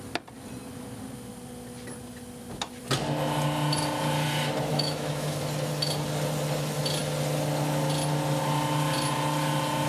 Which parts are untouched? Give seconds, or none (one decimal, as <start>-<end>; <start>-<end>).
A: 0.0-4.7; 5.4-9.9